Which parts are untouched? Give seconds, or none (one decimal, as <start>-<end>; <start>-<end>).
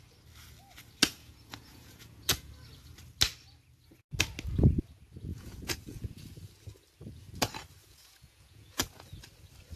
0.0-1.2; 2.5-5.3; 6.2-7.8; 9.2-9.8